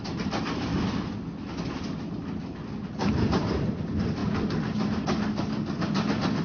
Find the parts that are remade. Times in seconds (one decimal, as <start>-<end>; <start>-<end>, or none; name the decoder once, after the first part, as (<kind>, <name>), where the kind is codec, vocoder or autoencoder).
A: 0.0-0.7 (vocoder, BigVGAN v2); 1.7-4.2